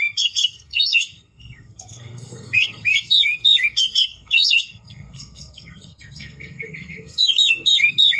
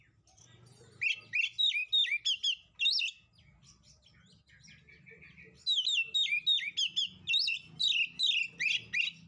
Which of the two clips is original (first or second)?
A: second